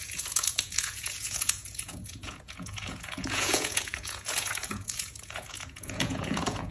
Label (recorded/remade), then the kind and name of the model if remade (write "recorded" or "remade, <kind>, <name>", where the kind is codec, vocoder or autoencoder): remade, vocoder, Vocos